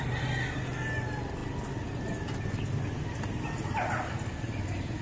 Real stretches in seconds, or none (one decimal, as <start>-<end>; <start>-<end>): 0.0-5.0